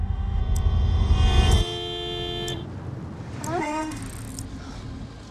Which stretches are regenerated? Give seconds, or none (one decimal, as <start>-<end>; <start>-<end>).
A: 0.0-0.4; 3.6-4.0